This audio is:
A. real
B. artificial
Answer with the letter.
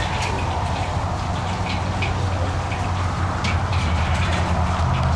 A